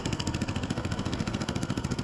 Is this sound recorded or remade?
remade